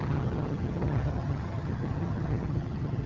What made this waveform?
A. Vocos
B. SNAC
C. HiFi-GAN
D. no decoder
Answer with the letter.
C